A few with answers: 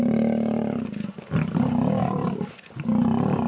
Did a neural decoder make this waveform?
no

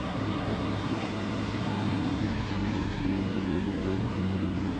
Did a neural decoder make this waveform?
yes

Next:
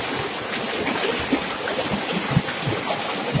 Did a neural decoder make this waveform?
no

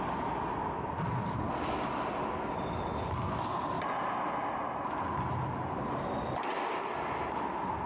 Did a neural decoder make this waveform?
no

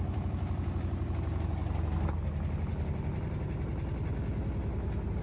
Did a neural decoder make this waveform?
no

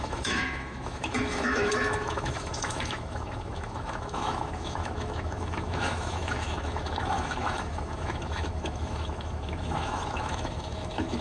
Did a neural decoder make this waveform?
yes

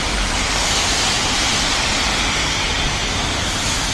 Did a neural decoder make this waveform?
yes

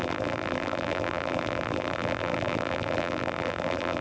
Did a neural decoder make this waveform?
yes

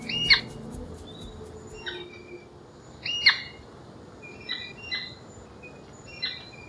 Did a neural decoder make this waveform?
no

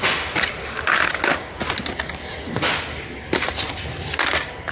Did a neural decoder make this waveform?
no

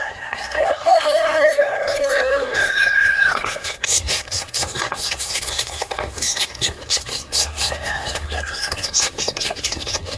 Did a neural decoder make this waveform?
yes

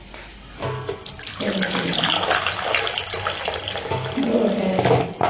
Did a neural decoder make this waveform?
no